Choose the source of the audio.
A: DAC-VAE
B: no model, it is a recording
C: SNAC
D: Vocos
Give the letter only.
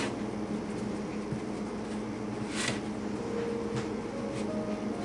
B